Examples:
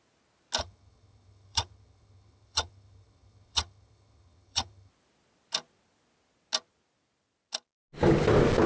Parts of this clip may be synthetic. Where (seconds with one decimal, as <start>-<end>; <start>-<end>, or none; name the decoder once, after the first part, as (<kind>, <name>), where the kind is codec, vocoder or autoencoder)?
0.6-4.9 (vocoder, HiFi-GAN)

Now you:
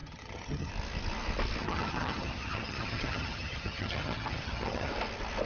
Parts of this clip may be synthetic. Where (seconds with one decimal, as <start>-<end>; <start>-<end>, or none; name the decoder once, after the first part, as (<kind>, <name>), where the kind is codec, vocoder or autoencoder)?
0.0-0.7 (vocoder, HiFi-GAN); 1.6-4.9

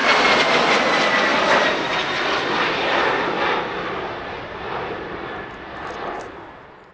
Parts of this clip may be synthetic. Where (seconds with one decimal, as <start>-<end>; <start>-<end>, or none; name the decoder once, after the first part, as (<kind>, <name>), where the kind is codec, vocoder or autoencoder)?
none

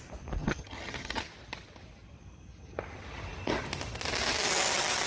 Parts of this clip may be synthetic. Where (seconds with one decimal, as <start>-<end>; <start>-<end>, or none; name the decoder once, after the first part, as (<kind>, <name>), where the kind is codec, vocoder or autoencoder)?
0.4-1.2 (vocoder, HiFi-GAN)

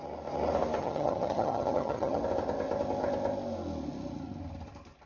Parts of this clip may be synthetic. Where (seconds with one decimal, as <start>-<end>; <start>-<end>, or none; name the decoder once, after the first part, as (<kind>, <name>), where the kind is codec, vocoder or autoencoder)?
0.8-2.2 (vocoder, HiFi-GAN)

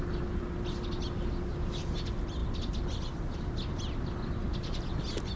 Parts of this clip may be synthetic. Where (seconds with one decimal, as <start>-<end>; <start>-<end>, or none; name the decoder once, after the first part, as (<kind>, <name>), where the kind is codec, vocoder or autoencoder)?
none

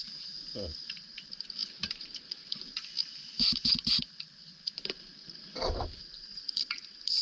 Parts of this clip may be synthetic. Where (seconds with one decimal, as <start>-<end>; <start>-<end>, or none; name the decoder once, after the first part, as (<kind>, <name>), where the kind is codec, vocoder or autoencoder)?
none

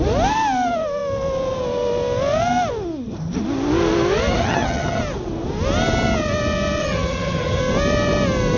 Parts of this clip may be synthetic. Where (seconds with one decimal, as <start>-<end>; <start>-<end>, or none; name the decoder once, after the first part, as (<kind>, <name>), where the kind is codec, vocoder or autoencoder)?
4.4-5.0 (vocoder, HiFi-GAN); 6.8-7.6